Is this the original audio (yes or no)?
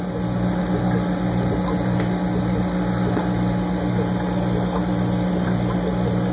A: yes